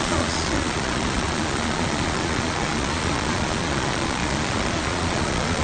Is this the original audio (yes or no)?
no